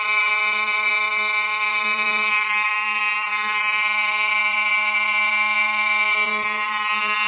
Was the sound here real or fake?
fake